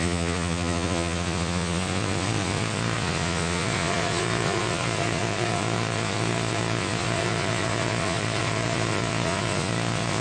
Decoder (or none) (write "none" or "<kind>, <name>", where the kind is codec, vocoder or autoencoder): vocoder, Vocos